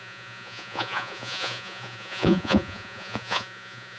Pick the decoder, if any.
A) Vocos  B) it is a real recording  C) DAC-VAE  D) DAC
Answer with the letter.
A